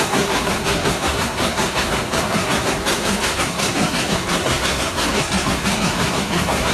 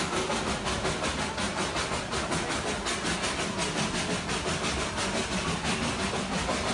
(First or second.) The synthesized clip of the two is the first